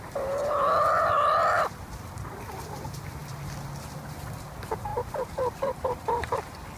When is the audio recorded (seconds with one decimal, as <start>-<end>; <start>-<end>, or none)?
0.0-3.2; 4.0-4.9; 6.3-6.8

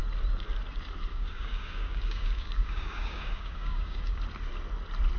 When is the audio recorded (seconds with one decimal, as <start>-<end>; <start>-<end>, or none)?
0.0-1.1; 4.2-5.2

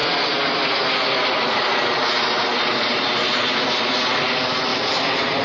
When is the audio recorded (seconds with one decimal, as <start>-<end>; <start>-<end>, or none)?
0.0-4.7